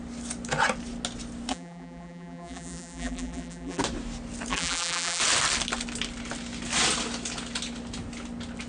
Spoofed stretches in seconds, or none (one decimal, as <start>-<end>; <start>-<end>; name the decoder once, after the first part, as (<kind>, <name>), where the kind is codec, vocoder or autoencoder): 1.5-3.8 (vocoder, BigVGAN v2); 4.5-5.2